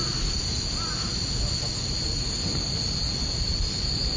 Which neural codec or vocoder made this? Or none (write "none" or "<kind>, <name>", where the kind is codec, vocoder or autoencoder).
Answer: none